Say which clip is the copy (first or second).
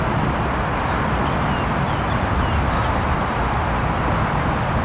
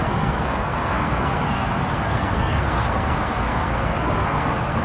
second